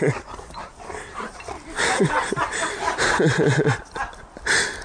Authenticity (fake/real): fake